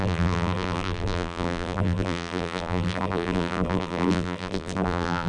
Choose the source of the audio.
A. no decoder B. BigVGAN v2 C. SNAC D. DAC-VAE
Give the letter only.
B